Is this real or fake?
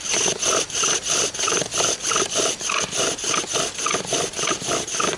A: real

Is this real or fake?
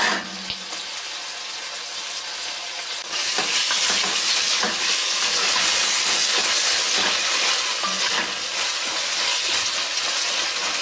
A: real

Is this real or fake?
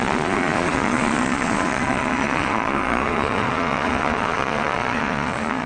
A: fake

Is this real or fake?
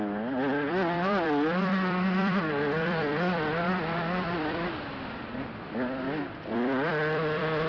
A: fake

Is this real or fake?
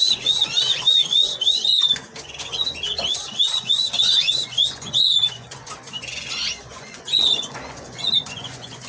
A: fake